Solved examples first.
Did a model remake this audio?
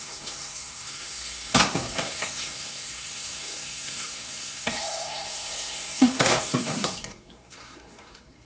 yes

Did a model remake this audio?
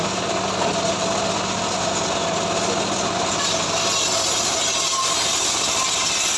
no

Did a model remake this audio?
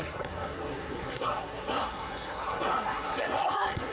yes